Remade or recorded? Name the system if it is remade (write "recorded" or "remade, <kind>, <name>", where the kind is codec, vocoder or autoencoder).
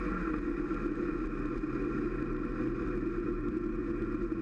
recorded